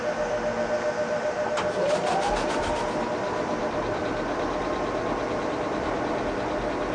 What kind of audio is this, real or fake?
real